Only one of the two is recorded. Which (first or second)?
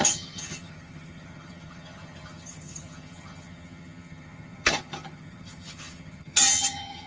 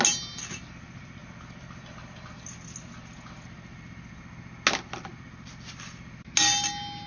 second